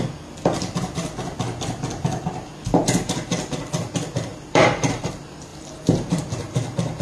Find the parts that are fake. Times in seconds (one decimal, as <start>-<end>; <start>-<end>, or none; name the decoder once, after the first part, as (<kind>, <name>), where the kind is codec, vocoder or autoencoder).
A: 2.8-3.6 (vocoder, BigVGAN v2); 4.3-5.1; 5.5-6.2